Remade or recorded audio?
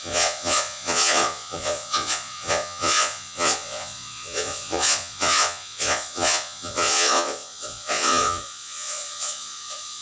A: remade